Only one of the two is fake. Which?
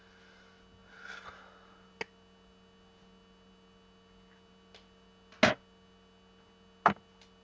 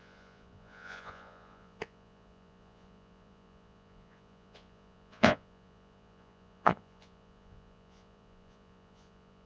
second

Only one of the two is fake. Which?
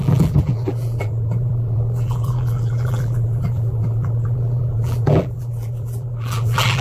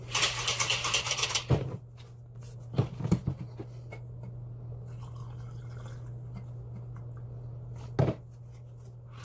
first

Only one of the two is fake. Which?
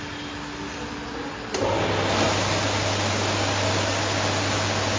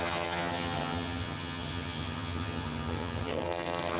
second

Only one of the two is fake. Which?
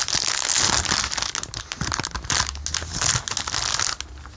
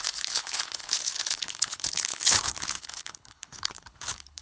second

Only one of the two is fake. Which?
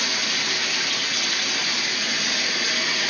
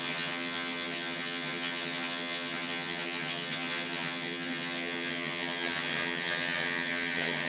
second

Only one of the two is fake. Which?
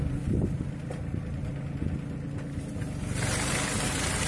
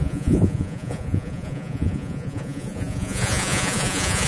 second